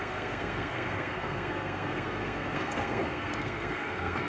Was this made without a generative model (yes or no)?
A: no